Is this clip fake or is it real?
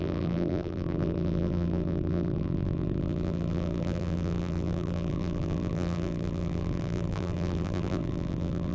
fake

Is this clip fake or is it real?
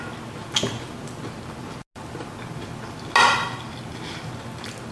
real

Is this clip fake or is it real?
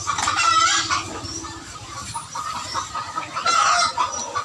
fake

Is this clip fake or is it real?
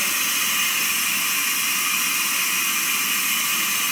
real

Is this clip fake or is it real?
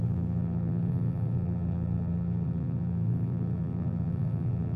fake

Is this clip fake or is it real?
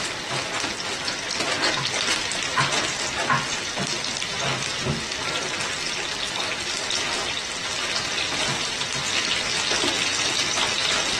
real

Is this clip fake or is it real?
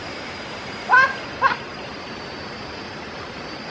fake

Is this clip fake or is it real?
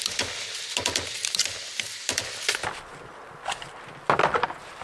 real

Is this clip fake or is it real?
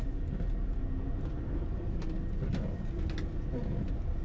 real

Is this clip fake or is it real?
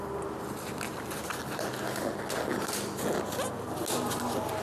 real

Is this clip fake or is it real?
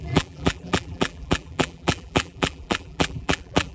fake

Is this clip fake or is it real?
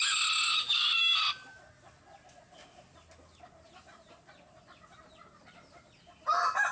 real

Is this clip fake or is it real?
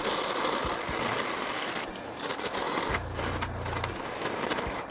real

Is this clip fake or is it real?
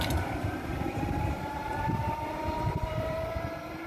fake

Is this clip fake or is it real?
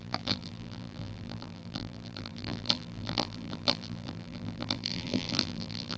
fake